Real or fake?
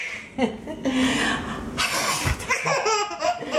real